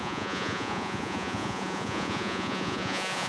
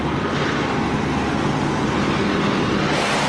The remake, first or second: first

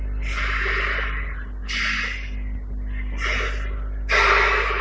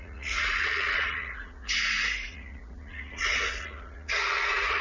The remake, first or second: second